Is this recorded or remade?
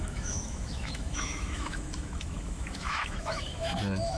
remade